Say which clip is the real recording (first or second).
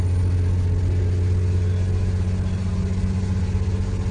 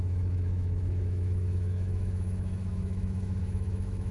first